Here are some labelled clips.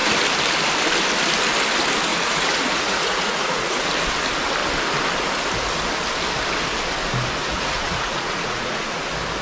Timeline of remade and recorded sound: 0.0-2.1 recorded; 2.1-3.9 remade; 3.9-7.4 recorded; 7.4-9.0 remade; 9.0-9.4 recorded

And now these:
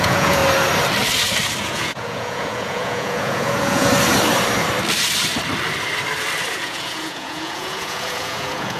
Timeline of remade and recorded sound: 0.0-0.4 remade; 0.4-1.6 recorded; 1.6-3.9 remade; 3.9-6.5 recorded; 6.5-8.8 remade

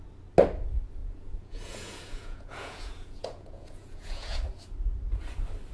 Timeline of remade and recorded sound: 0.0-1.0 recorded; 1.0-4.4 remade; 4.4-5.7 recorded

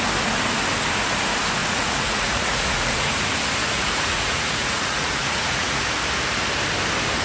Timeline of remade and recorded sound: 0.0-1.6 recorded; 1.6-3.2 remade; 3.2-3.6 recorded; 3.6-5.8 remade; 5.8-7.2 recorded